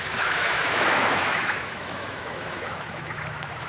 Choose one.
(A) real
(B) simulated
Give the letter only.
B